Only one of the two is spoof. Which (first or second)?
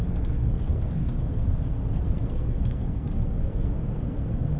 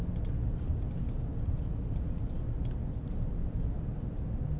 first